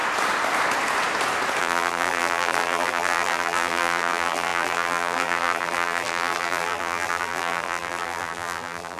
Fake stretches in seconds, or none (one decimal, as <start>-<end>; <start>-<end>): 1.6-9.0